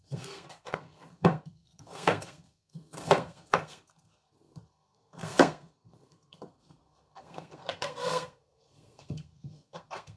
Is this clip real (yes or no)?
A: no